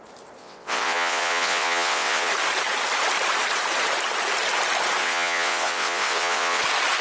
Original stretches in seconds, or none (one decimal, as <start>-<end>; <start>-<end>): 0.0-0.4; 2.3-5.0; 6.6-7.0